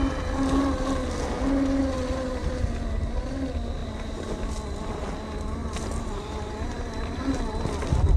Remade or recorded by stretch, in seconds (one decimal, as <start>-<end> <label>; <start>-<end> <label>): 0.0-5.6 recorded; 5.6-7.2 remade; 7.2-8.2 recorded